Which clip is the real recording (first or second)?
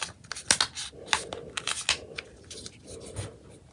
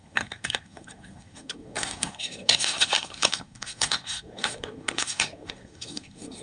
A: first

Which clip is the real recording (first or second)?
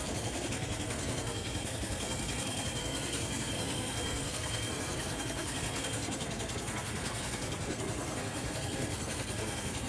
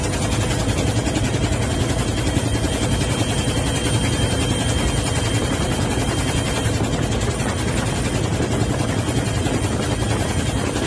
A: second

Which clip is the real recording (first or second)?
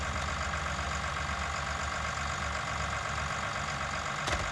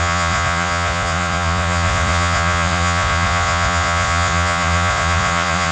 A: first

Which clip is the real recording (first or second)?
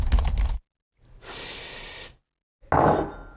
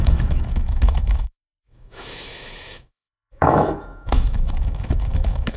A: first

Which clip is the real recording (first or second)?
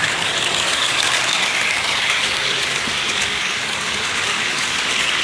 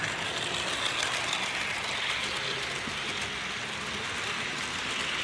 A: second